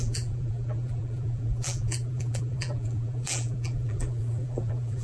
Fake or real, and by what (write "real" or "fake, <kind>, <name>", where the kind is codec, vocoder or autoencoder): fake, vocoder, BigVGAN v2